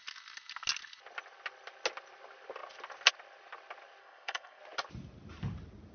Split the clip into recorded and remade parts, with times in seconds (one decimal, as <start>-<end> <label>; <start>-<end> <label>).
0.0-4.0 recorded; 4.0-4.6 remade; 4.6-5.9 recorded